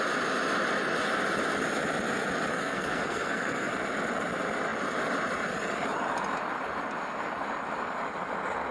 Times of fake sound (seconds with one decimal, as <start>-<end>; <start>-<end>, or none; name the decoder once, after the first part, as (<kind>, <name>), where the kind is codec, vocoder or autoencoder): 2.5-3.7 (codec, SNAC)